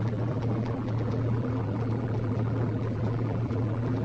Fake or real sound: fake